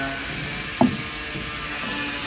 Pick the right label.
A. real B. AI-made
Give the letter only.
A